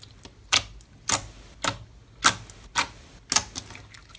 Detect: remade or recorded recorded